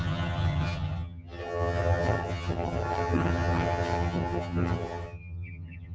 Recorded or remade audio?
remade